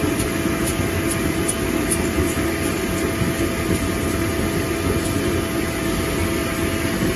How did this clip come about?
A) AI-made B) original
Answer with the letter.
B